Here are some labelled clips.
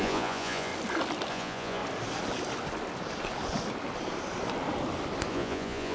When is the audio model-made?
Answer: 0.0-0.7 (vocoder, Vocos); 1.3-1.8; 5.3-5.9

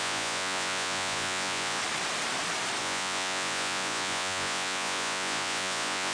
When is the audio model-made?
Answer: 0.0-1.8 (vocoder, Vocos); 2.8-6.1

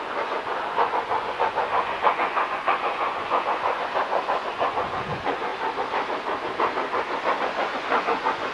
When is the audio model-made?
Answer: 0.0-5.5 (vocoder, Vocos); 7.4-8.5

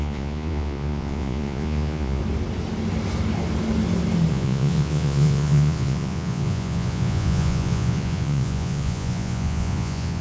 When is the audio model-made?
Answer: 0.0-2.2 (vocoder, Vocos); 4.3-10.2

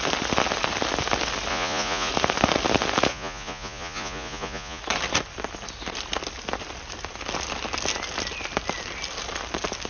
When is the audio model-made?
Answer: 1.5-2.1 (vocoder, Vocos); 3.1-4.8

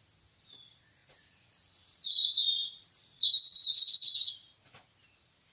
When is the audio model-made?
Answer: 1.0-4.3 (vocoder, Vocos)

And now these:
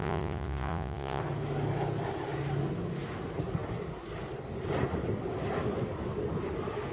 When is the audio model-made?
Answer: 0.0-1.2 (vocoder, Vocos)

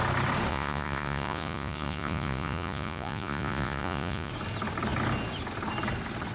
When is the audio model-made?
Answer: 0.5-4.3 (vocoder, Vocos)